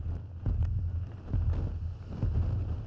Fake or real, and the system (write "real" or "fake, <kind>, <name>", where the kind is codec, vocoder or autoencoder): real